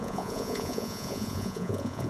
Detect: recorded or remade remade